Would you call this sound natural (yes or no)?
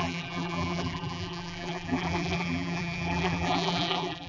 no